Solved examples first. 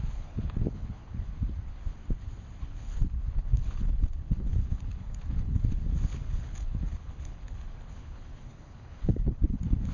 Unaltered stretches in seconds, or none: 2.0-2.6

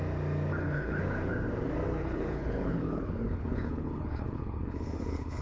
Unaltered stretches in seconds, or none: 0.0-0.5; 1.0-2.0

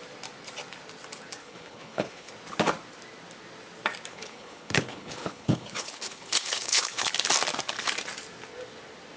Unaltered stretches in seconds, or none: 0.0-1.4; 2.3-4.1; 7.1-9.2